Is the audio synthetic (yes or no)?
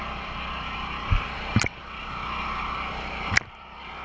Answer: yes